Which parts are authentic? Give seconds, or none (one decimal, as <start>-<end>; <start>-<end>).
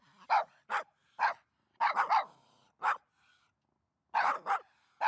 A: 0.0-5.1